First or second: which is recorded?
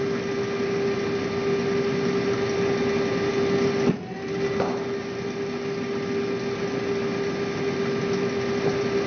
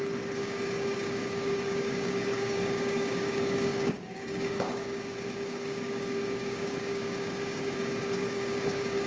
first